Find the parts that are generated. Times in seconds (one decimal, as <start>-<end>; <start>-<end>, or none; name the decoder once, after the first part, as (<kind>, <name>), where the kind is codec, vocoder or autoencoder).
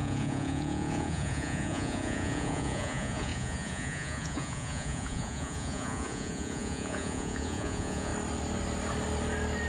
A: 0.0-8.1 (vocoder, Vocos)